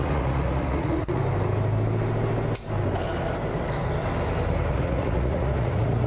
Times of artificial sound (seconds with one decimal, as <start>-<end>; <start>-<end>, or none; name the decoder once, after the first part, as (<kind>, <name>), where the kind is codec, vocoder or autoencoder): 0.0-1.2 (vocoder, Vocos); 4.7-6.1